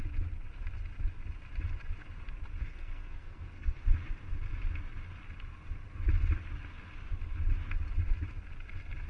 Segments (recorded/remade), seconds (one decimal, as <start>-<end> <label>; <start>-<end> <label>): 0.0-2.7 recorded; 2.7-3.8 remade; 3.8-9.1 recorded